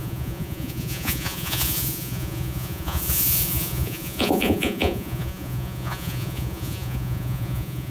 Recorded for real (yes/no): no